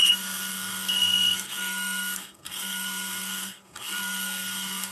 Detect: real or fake fake